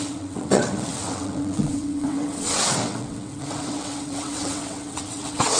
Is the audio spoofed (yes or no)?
yes